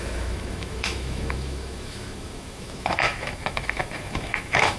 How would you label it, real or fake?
fake